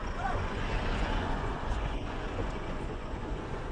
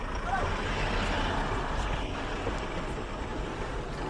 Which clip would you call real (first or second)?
second